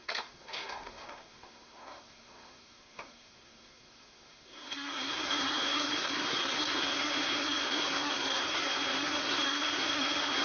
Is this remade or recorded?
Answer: remade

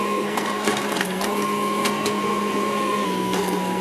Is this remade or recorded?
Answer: remade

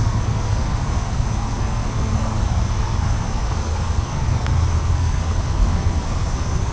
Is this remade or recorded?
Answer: remade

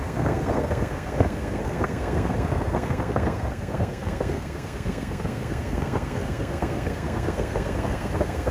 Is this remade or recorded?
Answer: remade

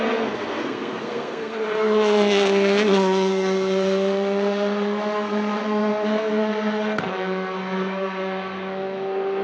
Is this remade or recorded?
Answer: remade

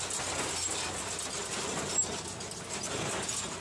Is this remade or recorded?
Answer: recorded